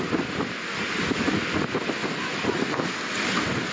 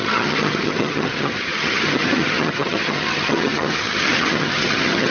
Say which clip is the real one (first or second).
first